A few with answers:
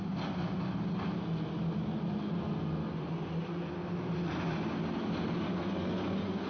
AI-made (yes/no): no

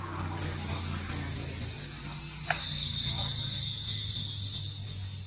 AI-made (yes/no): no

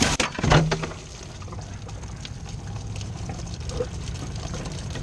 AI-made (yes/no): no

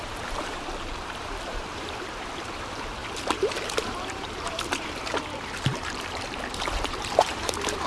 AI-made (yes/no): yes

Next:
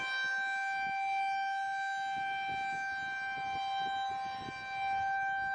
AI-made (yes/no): no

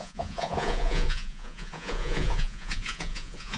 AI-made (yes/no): yes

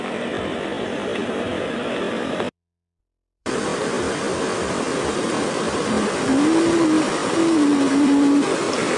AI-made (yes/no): yes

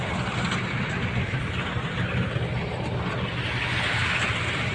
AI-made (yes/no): no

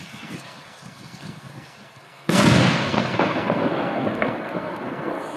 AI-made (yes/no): yes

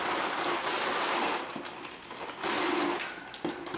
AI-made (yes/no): no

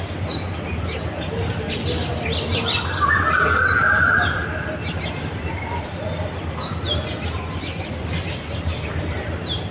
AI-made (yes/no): no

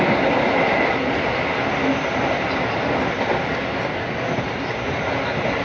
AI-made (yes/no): no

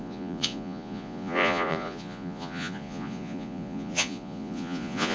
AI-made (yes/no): yes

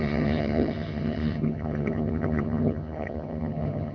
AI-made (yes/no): yes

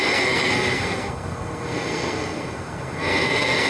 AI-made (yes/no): yes